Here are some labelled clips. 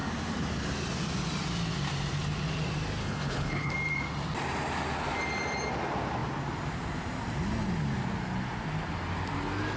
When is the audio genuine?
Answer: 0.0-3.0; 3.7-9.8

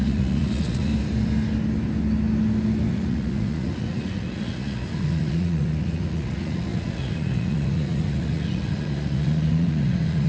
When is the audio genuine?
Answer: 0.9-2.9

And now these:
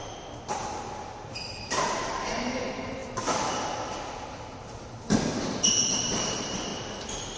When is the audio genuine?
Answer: 3.0-5.4; 6.7-7.4